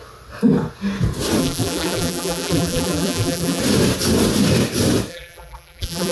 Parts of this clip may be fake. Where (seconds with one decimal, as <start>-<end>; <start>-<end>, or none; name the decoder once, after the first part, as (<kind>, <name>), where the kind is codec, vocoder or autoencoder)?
1.4-3.6 (vocoder, BigVGAN v2); 5.1-6.1